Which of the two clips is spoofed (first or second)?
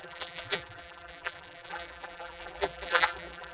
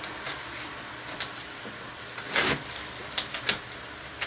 first